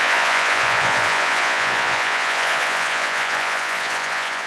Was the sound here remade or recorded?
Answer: remade